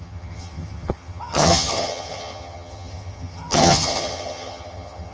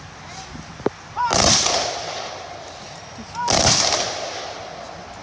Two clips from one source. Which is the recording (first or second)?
second